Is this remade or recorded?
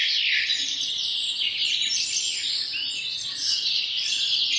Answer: remade